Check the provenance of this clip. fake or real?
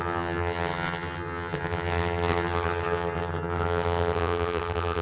fake